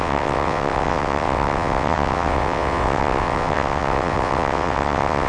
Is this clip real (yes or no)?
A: no